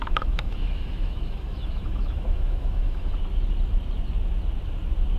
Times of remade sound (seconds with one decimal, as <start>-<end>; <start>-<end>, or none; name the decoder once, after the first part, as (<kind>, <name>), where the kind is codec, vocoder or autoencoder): 0.0-3.1 (autoencoder, DAC-VAE)